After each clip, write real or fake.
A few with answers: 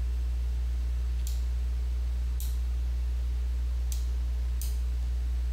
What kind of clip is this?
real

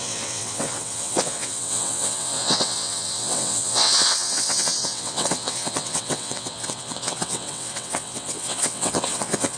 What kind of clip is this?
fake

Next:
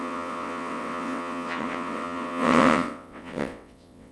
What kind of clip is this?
fake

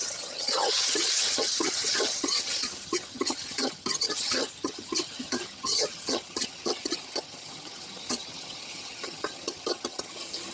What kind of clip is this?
fake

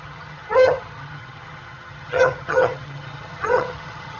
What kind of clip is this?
fake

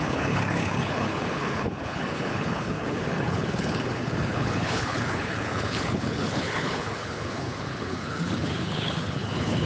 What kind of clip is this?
fake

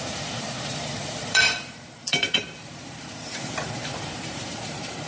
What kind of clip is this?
fake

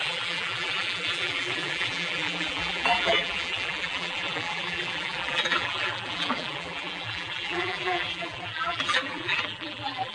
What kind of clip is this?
fake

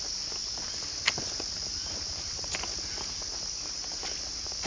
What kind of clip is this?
real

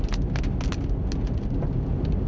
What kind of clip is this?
real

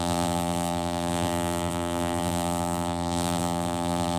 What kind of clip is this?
fake